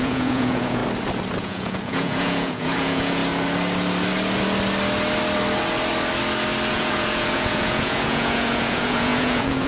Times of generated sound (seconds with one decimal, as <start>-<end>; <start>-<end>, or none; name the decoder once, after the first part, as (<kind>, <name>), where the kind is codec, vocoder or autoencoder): 0.0-0.8 (vocoder, Vocos); 1.4-3.2; 6.7-9.7